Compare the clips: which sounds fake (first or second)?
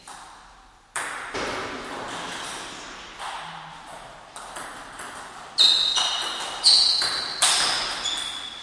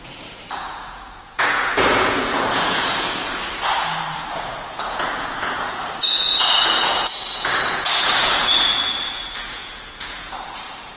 second